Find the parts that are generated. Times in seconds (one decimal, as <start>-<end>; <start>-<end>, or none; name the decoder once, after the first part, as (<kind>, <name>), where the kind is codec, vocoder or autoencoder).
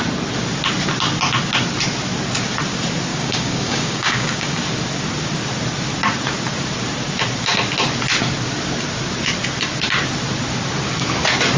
3.1-4.6 (codec, DAC)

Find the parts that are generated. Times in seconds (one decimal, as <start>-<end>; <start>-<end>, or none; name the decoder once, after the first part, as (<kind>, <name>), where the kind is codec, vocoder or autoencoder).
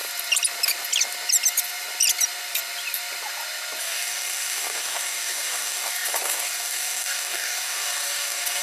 3.8-8.6 (codec, DAC)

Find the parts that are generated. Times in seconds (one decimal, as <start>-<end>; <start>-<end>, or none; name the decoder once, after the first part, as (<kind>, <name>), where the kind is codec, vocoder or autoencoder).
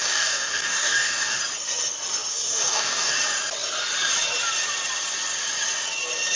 0.0-1.4 (codec, DAC); 2.3-3.1